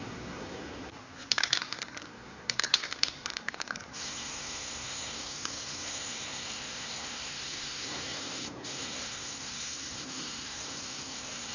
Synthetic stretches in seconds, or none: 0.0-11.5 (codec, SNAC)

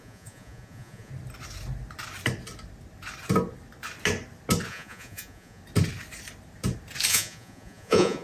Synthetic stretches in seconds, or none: 0.0-1.1 (vocoder, Vocos); 4.7-5.6; 7.1-8.2

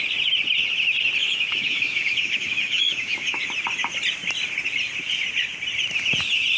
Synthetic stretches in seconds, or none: 1.2-3.4 (autoencoder, DAC-VAE)